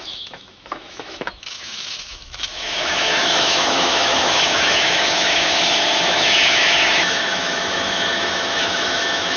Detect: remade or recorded remade